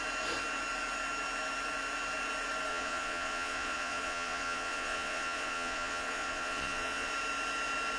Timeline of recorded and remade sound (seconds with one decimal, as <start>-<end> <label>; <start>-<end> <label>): 0.0-2.7 recorded; 2.7-7.1 remade; 7.1-8.0 recorded